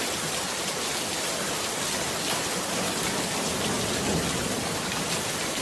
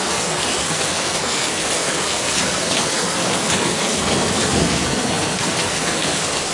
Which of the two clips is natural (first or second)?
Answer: first